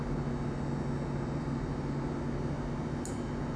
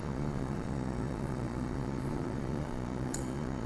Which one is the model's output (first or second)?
second